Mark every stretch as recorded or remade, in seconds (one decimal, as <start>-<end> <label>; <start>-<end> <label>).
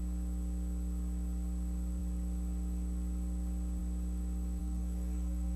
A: 0.0-4.6 recorded; 4.6-5.6 remade